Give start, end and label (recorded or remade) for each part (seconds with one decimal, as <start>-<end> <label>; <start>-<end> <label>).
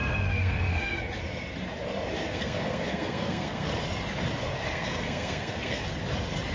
0.0-1.0 remade; 1.0-2.2 recorded; 2.2-3.7 remade; 3.7-4.7 recorded; 4.7-5.8 remade; 5.8-6.5 recorded